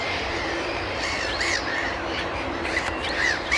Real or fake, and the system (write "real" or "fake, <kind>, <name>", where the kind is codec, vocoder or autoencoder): fake, vocoder, BigVGAN v2